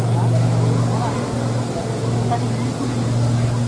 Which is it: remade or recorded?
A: recorded